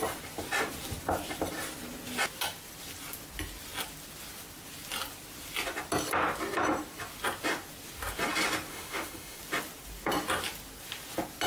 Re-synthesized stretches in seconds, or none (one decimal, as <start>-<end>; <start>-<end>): 8.7-9.4